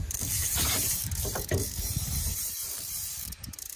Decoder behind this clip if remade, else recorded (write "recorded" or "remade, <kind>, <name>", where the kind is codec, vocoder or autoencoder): remade, vocoder, BigVGAN v2